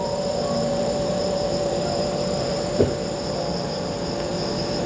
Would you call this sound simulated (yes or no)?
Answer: yes